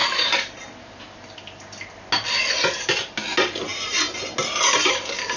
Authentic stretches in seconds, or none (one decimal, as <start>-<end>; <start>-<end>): 0.0-5.4